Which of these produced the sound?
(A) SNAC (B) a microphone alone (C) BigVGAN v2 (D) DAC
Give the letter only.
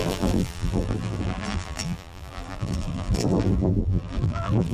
C